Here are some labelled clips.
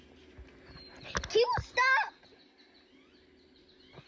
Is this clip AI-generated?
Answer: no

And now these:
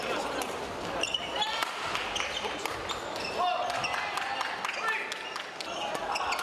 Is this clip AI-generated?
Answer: no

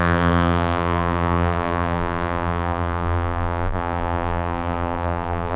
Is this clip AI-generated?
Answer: yes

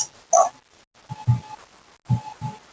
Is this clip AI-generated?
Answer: no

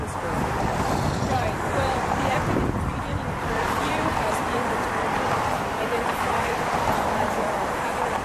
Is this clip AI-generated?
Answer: yes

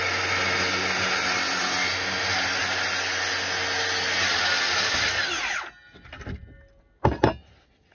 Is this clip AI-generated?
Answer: no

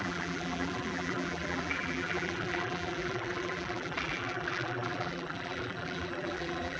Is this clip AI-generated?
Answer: yes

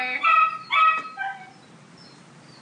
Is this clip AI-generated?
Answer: no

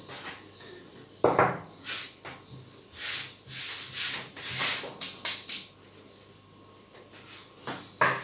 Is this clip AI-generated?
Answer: no